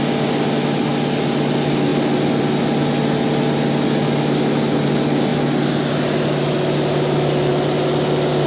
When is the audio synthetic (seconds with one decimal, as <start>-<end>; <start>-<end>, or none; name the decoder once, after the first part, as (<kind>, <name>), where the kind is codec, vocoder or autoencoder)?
none